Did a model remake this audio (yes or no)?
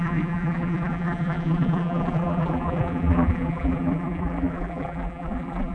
yes